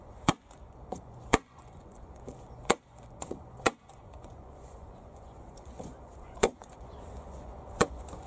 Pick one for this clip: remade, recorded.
remade